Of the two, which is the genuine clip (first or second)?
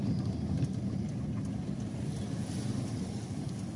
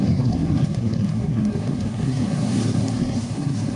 first